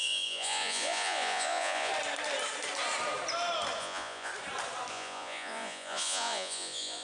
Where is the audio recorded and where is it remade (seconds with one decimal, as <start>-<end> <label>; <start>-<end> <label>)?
0.0-1.9 remade; 1.9-3.8 recorded; 3.8-4.3 remade; 4.3-4.9 recorded; 4.9-7.0 remade